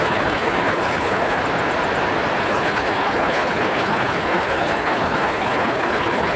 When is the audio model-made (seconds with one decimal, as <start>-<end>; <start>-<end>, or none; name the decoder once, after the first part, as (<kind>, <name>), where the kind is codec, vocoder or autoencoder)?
0.0-1.4 (codec, HILCodec); 2.4-6.4